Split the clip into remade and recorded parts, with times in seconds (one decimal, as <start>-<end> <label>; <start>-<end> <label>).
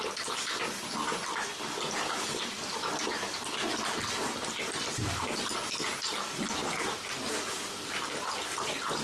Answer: 0.0-9.0 recorded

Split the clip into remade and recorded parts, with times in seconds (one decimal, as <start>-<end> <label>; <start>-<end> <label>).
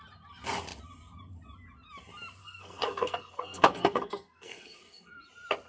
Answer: 0.0-2.4 recorded; 2.4-5.2 remade; 5.2-5.7 recorded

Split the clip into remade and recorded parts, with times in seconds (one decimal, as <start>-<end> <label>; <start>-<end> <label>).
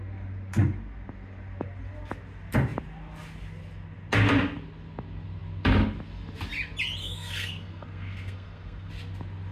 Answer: 0.0-7.0 recorded; 7.0-8.9 remade; 8.9-9.5 recorded